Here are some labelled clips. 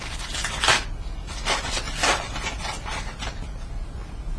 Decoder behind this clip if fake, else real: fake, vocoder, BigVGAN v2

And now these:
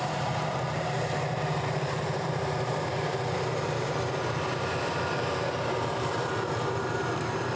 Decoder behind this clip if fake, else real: fake, vocoder, BigVGAN v2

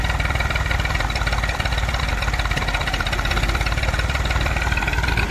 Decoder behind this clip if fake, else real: fake, vocoder, BigVGAN v2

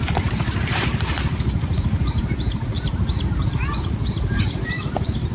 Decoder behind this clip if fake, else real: fake, vocoder, BigVGAN v2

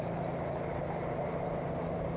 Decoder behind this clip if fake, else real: fake, vocoder, BigVGAN v2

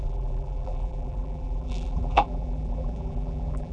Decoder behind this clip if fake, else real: fake, vocoder, BigVGAN v2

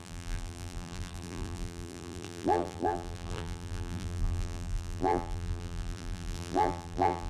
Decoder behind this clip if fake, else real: fake, vocoder, BigVGAN v2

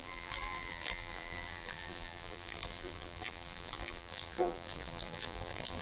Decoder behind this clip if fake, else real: fake, vocoder, BigVGAN v2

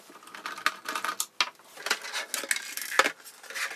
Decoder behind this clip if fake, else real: real